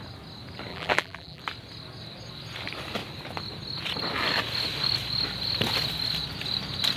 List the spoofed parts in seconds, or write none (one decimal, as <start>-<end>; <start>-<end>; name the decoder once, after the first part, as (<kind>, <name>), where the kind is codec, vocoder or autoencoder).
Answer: 0.7-1.4 (vocoder, BigVGAN v2)